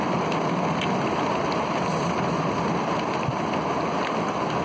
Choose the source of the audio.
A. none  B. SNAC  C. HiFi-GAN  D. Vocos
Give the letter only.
A